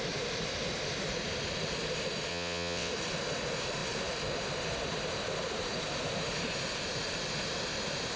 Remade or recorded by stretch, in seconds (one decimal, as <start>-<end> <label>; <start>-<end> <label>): 0.0-2.3 recorded; 2.3-2.9 remade; 2.9-8.2 recorded